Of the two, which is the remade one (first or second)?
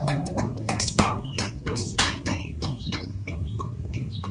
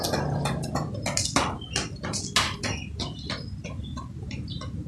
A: first